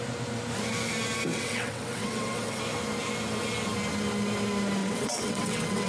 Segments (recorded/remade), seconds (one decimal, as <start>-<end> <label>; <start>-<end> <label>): 0.0-1.3 recorded; 1.3-2.6 remade; 2.6-4.8 recorded; 4.8-5.9 remade